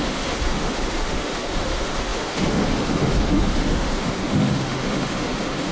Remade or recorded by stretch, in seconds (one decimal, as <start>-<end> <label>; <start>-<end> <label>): 0.0-5.7 remade

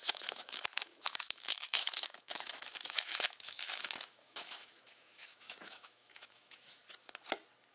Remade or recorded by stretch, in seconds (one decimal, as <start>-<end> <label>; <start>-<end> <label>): 0.0-6.8 remade; 6.8-7.7 recorded